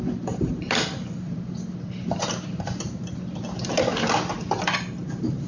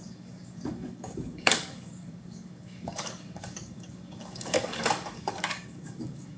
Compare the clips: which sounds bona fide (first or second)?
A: first